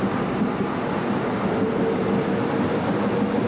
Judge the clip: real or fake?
real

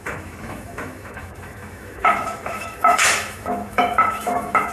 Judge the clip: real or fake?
fake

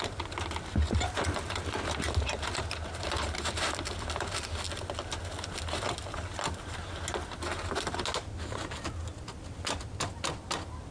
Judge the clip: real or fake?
real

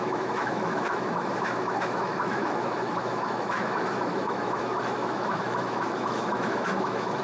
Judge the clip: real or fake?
fake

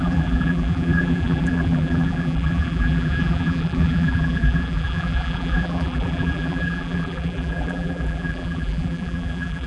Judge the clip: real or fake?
fake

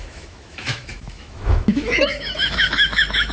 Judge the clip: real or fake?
fake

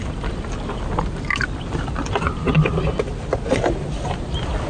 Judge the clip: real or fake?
real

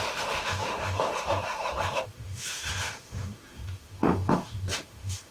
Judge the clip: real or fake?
fake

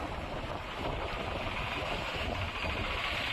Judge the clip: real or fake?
real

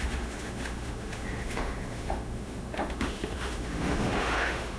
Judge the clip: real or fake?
fake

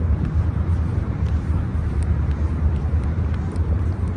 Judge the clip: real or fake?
fake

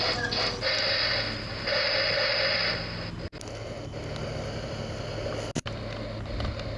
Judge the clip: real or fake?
real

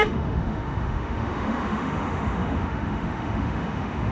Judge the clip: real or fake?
fake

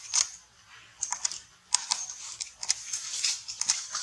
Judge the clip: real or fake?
real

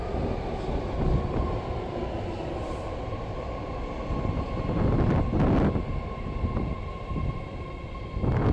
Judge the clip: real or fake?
real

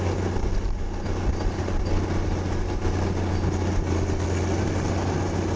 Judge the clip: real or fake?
real